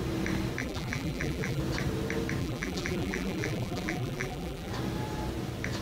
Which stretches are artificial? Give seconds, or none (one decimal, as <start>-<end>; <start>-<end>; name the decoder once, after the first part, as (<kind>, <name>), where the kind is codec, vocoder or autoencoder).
0.6-1.6 (vocoder, BigVGAN v2); 2.4-4.7